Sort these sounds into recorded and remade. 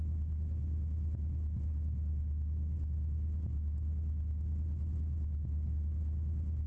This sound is recorded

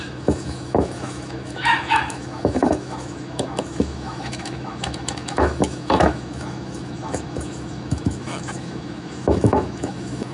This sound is remade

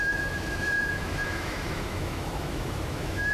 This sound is remade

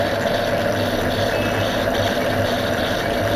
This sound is recorded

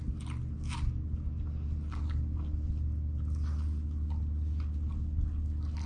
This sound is recorded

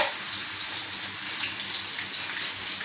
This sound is recorded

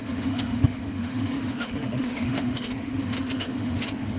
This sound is remade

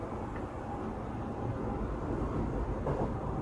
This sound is recorded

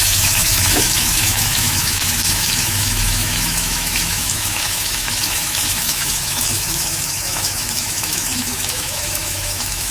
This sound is remade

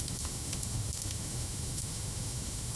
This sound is remade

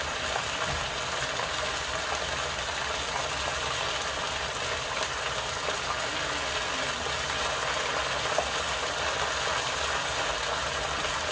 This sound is recorded